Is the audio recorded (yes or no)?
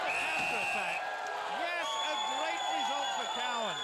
yes